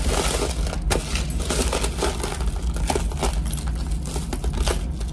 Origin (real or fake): real